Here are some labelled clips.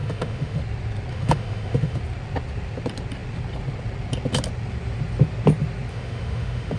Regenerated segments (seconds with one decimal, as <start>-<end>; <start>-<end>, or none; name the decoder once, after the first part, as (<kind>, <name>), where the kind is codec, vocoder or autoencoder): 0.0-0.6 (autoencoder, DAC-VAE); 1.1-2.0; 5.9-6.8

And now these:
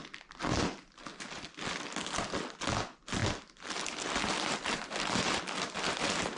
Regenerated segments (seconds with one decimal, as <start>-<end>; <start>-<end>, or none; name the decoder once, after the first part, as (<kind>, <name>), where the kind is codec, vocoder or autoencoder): none

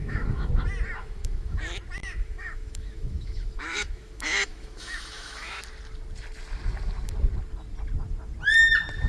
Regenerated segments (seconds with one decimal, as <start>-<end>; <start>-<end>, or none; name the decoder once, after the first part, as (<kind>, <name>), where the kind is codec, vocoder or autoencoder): 0.0-0.5 (autoencoder, DAC-VAE); 1.0-1.6; 2.0-5.6

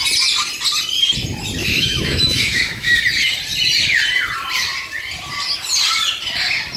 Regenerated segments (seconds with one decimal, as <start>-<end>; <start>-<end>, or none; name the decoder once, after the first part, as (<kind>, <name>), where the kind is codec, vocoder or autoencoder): 1.6-3.0 (autoencoder, DAC-VAE)